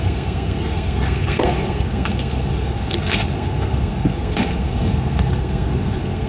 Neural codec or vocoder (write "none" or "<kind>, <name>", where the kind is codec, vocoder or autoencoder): codec, SNAC